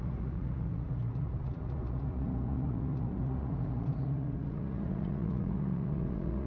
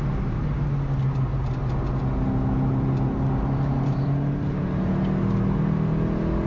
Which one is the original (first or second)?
second